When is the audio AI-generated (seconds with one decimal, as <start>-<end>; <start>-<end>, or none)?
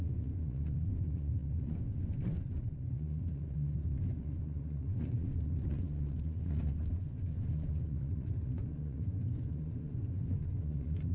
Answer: 0.0-11.1